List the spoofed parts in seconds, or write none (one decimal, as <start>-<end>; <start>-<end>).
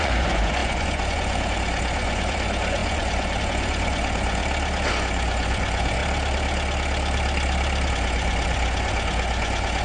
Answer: 0.0-4.4; 4.9-6.0; 7.9-9.8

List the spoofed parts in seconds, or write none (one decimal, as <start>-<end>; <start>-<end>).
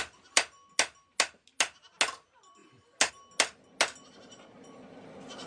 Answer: none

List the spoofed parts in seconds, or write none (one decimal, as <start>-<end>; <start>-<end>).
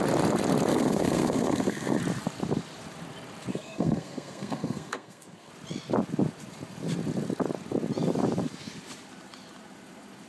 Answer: 0.7-2.0; 3.5-5.5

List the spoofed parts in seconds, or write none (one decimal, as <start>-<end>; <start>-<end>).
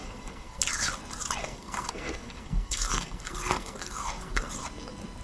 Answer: 0.0-0.6; 1.4-4.5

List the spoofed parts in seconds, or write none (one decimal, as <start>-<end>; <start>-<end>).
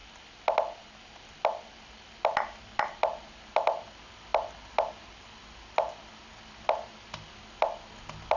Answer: none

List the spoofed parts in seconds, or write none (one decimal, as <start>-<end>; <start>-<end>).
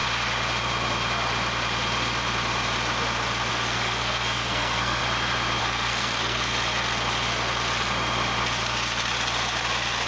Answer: 3.5-5.0; 5.6-6.5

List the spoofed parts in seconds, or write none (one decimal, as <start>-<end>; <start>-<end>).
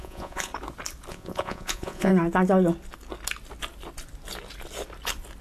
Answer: 0.0-0.5; 1.1-2.1